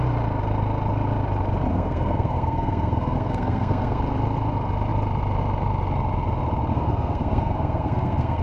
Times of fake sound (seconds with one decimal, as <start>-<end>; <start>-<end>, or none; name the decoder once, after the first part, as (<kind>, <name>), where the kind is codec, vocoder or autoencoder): 1.7-4.0 (codec, SNAC); 6.7-8.4